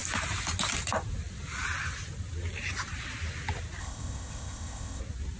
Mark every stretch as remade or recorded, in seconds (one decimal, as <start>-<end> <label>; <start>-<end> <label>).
0.0-3.8 recorded; 3.8-5.0 remade; 5.0-5.4 recorded